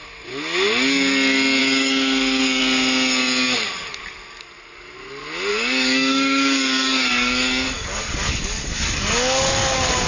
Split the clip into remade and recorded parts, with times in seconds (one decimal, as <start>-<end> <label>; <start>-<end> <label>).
0.0-1.6 recorded; 1.6-2.6 remade; 2.6-5.5 recorded; 5.5-10.1 remade